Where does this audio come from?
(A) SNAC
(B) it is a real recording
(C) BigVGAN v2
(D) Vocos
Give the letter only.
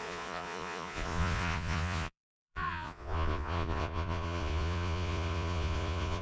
D